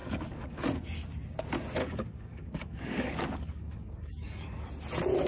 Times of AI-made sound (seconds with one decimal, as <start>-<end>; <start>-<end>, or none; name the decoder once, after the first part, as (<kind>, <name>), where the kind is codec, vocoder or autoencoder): 0.0-0.6 (codec, DAC); 1.8-4.7